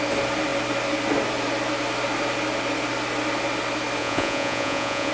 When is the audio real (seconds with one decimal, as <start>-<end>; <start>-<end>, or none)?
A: 0.0-4.0